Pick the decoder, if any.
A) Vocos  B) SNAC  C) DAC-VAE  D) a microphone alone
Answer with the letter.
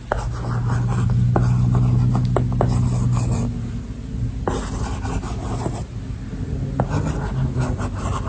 D